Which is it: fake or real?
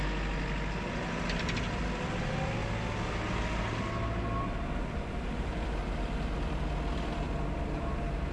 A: real